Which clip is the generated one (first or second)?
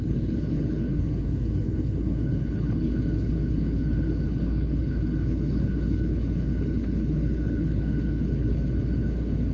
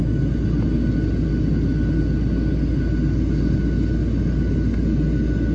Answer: first